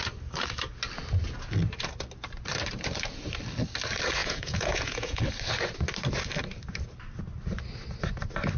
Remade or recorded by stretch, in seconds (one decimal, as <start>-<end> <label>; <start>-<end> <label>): 0.0-4.2 recorded; 4.2-5.2 remade; 5.2-8.6 recorded